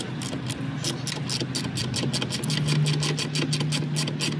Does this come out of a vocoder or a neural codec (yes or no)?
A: no